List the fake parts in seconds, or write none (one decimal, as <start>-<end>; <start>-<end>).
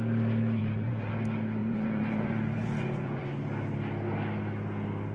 0.6-1.1; 1.6-3.4